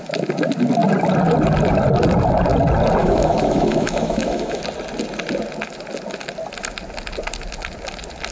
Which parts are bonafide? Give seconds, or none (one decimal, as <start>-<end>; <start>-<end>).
0.0-3.0; 4.6-8.3